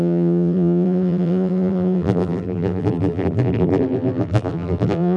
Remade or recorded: remade